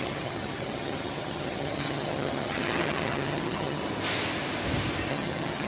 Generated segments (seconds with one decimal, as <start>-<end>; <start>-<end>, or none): 0.0-3.8; 5.1-5.7